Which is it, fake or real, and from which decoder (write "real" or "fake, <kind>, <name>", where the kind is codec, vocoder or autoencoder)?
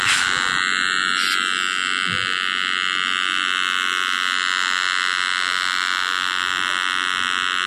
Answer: real